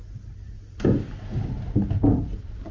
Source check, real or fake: real